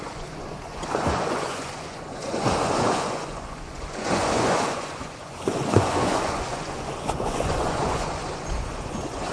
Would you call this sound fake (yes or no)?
yes